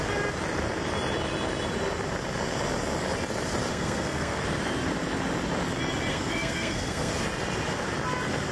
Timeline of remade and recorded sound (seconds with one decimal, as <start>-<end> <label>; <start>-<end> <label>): 0.0-3.7 recorded; 3.7-4.4 remade; 4.4-6.1 recorded; 6.1-7.1 remade; 7.1-8.5 recorded